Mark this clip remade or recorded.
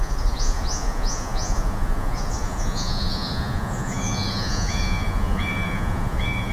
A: remade